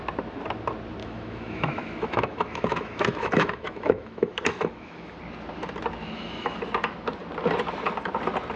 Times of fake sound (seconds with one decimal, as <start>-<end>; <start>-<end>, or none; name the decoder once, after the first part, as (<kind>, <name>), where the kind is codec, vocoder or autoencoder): 1.0-5.2 (autoencoder, DAC-VAE); 6.0-6.6